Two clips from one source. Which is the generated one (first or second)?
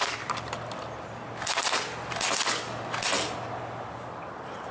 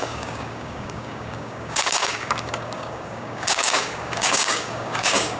second